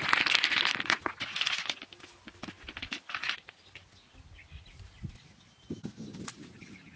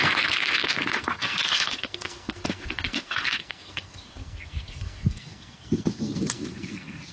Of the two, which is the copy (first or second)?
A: second